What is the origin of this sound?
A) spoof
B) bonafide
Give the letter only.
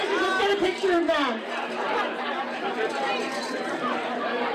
A